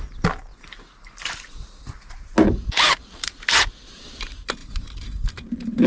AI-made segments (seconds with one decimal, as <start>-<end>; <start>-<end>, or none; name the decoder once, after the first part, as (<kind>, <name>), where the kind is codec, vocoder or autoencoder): 4.6-5.9 (vocoder, BigVGAN v2)